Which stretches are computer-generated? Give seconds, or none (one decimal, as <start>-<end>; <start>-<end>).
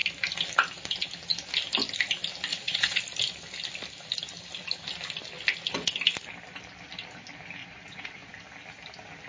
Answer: 2.5-3.0; 7.6-8.3